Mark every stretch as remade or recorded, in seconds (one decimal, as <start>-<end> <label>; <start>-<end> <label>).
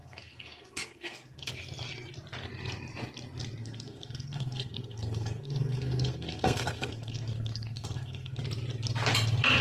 0.0-1.5 remade; 1.5-3.6 recorded; 3.6-8.4 remade; 8.4-9.6 recorded